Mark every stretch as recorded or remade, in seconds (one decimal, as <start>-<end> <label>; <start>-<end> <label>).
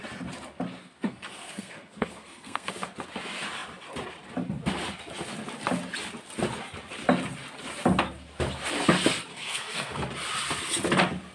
0.0-0.8 recorded; 0.8-2.7 remade; 2.7-9.3 recorded; 9.3-10.0 remade; 10.0-11.3 recorded